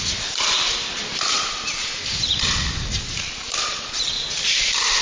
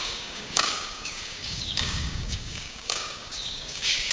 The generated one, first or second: second